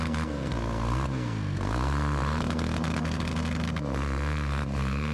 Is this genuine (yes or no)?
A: no